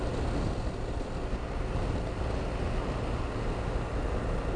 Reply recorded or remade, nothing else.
recorded